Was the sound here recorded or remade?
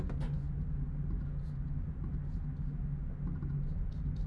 recorded